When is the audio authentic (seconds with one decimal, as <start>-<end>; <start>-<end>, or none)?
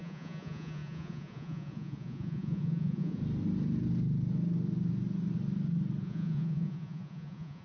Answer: 3.2-6.0